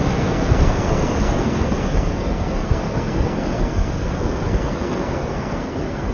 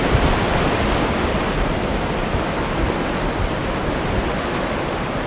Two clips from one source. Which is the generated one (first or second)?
first